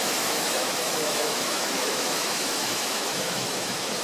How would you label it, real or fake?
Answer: fake